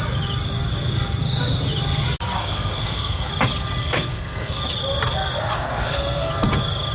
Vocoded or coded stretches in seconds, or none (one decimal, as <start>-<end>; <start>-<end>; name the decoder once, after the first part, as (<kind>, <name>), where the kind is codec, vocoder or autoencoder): 2.4-3.3 (codec, SNAC); 3.8-4.6; 5.5-6.3